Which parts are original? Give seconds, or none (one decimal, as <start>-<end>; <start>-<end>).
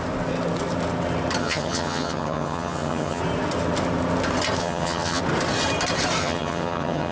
0.0-1.4; 3.2-4.6; 5.2-6.2